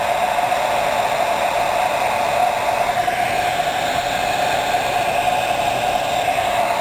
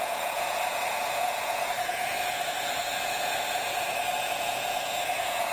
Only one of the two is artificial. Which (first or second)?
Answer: second